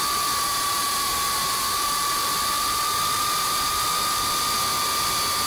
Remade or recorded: remade